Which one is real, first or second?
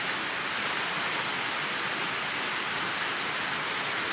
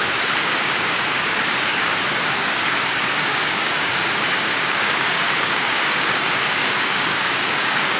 first